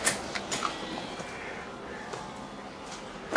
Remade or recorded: recorded